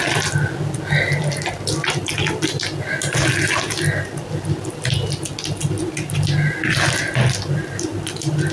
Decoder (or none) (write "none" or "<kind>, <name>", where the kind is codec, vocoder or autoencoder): none